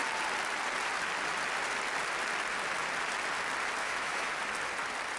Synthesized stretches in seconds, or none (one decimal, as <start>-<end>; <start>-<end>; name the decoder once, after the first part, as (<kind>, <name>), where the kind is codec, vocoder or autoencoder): 3.8-4.3 (autoencoder, DAC-VAE)